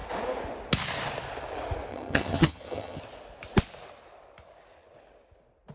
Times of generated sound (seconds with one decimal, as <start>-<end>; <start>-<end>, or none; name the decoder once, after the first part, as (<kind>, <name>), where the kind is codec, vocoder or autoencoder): 1.9-3.0 (vocoder, HiFi-GAN)